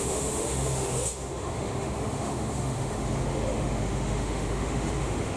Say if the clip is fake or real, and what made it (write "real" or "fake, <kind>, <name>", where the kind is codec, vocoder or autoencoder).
fake, autoencoder, DAC-VAE